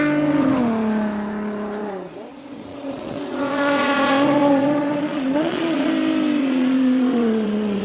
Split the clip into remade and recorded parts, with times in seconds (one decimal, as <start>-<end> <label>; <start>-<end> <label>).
0.0-1.8 recorded; 1.8-5.9 remade; 5.9-6.4 recorded; 6.4-7.8 remade